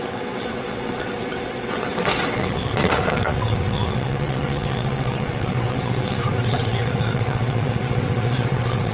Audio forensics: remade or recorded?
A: remade